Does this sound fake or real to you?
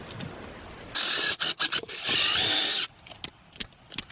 real